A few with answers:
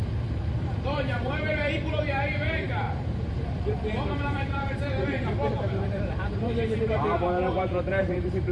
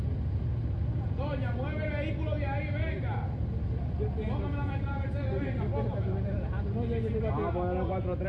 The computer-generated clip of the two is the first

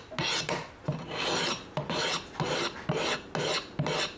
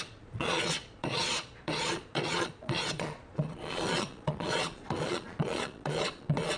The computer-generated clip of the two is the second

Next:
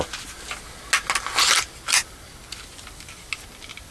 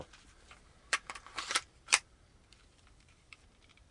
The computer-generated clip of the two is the second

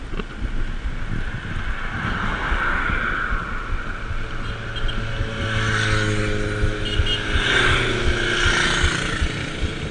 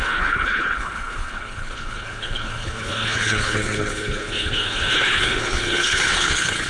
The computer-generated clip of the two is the second